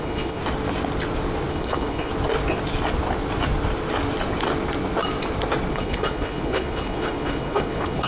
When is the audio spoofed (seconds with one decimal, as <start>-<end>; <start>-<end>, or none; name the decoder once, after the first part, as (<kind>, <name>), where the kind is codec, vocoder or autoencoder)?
0.0-0.4 (codec, HILCodec); 1.5-2.1; 5.7-8.1